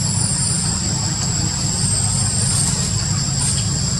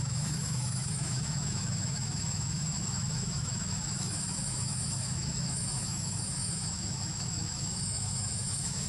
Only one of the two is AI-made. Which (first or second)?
second